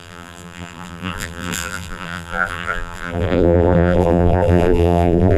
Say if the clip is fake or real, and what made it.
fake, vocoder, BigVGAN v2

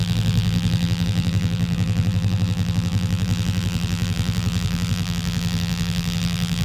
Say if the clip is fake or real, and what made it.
fake, vocoder, BigVGAN v2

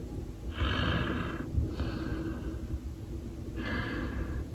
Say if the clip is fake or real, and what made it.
real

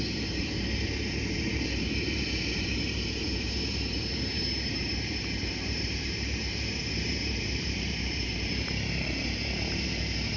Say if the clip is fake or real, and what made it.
fake, vocoder, BigVGAN v2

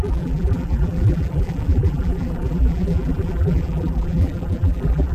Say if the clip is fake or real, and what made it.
fake, vocoder, BigVGAN v2